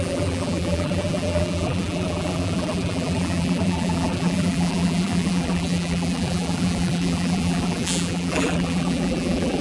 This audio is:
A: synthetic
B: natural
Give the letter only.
A